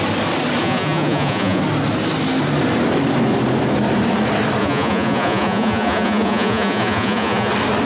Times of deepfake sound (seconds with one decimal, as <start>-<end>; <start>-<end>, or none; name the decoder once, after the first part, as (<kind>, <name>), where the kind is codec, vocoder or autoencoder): 0.6-1.6 (vocoder, Vocos); 4.6-7.5